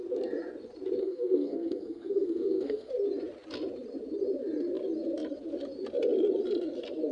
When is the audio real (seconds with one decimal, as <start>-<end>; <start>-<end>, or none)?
0.0-1.0; 2.9-7.1